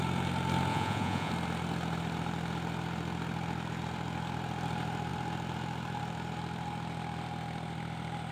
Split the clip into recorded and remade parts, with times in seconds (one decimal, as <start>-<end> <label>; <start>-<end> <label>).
0.0-0.7 recorded; 0.7-1.3 remade; 1.3-8.3 recorded